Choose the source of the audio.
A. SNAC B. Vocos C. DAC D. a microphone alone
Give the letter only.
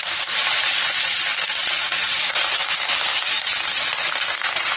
D